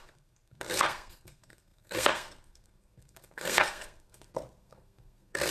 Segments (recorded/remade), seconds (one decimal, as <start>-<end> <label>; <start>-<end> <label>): 0.0-5.5 remade

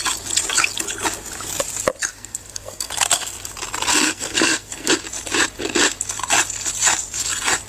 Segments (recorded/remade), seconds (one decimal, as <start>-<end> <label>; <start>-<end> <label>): 0.0-2.1 recorded; 2.1-2.9 remade; 2.9-3.9 recorded; 3.9-4.9 remade; 4.9-7.7 recorded

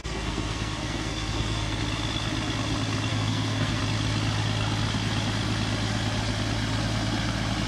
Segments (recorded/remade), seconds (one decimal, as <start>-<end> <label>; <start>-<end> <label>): 0.0-1.8 remade; 1.8-3.1 recorded; 3.1-3.8 remade; 3.8-7.7 recorded

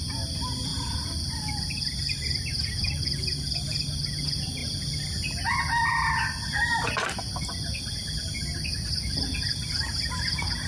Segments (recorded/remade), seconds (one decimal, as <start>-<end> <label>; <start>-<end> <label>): 0.0-10.7 recorded

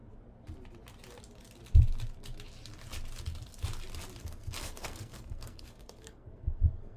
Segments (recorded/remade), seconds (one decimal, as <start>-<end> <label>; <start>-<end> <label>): 0.0-4.2 recorded; 4.2-7.0 remade

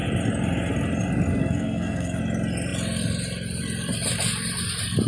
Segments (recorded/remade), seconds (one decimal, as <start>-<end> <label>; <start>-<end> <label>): 0.0-1.3 recorded; 1.3-2.2 remade; 2.2-5.1 recorded